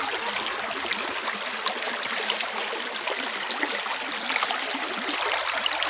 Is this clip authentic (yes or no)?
yes